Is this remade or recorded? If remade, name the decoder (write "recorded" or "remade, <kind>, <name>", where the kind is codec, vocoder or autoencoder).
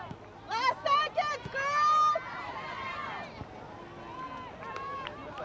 recorded